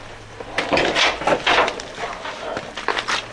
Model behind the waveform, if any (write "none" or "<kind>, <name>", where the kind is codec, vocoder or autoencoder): none